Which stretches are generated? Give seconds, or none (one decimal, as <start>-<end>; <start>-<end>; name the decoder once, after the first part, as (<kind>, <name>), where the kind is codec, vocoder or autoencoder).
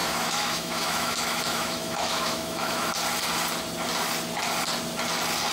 0.0-2.9 (autoencoder, DAC-VAE)